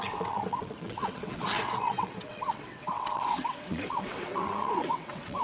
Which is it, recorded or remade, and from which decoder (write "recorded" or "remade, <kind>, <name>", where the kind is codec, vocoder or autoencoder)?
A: remade, vocoder, WaveNeXt